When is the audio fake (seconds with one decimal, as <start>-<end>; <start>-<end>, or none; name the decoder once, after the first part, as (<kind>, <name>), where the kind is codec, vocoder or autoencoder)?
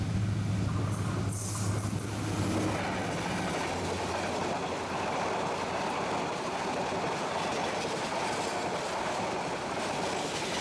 none